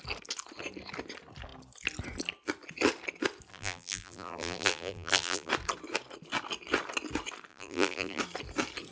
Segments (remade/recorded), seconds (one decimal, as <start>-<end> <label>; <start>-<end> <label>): 0.0-3.5 recorded; 3.5-5.5 remade; 5.5-7.5 recorded; 7.5-8.2 remade; 8.2-8.9 recorded